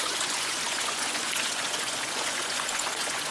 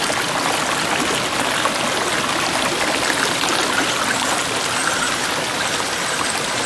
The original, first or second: second